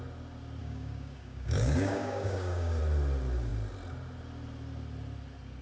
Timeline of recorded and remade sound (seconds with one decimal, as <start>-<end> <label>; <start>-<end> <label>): 0.0-0.6 recorded; 0.6-2.8 remade; 2.8-5.6 recorded